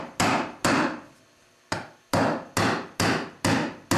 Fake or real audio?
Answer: real